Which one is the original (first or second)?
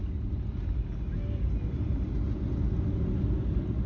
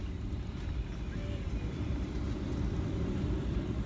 first